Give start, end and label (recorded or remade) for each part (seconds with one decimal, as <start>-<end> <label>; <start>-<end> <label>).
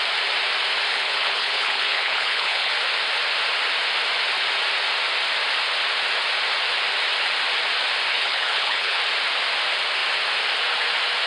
0.0-0.9 recorded; 0.9-2.7 remade; 2.7-8.1 recorded; 8.1-9.0 remade; 9.0-11.3 recorded